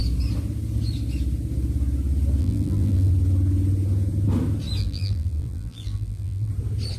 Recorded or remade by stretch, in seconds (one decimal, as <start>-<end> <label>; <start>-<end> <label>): 0.0-2.4 recorded; 2.4-3.1 remade; 3.1-4.8 recorded; 4.8-6.5 remade; 6.5-7.0 recorded